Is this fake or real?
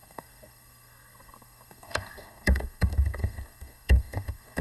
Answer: fake